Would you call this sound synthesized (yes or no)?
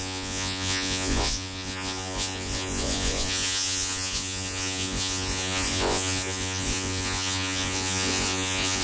yes